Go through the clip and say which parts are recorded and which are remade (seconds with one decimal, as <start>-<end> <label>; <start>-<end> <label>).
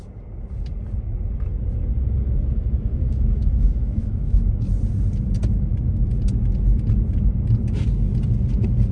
0.0-2.9 recorded; 2.9-4.5 remade; 4.5-8.9 recorded